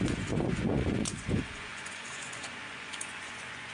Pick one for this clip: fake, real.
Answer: fake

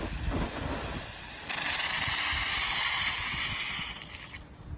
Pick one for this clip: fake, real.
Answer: real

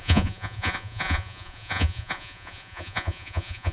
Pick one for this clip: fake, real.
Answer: fake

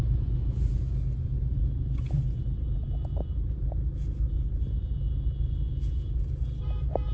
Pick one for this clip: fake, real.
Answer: fake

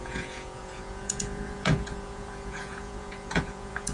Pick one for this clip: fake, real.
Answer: fake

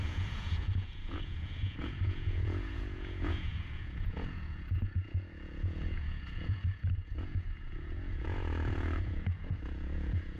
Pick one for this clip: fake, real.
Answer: fake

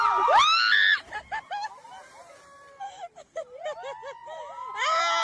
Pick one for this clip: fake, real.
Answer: real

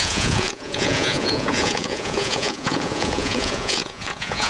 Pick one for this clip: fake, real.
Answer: fake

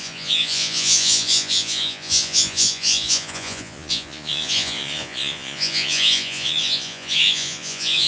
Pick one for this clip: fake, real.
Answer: fake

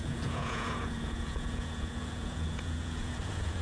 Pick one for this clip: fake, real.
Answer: fake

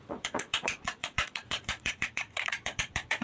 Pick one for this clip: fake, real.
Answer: fake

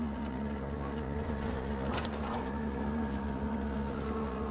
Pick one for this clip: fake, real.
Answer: fake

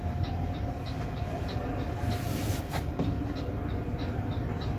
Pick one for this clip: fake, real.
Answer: real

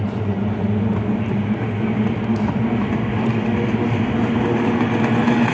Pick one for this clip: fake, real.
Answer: real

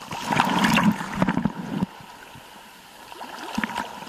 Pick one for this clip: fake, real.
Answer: real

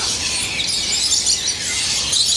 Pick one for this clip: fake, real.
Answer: real